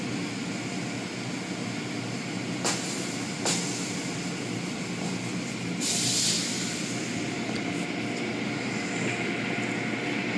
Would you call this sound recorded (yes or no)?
yes